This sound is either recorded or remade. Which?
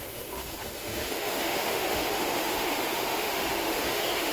remade